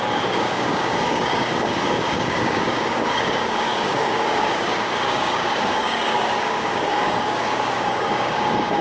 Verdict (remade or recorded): remade